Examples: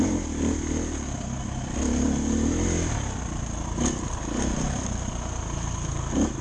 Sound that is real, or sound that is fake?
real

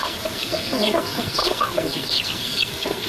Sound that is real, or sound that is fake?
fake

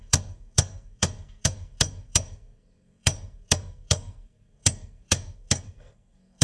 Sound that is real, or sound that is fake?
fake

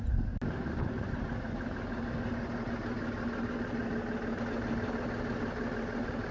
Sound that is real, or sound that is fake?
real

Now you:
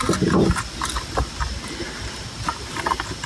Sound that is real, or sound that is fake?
real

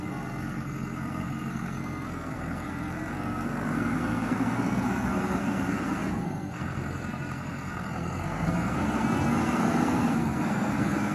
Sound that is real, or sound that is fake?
fake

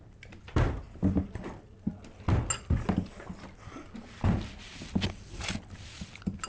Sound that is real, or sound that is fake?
real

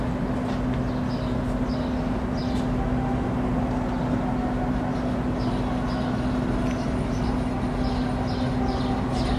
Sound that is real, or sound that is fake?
real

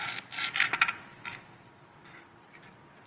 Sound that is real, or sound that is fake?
real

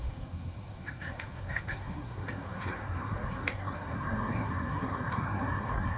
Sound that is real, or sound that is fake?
fake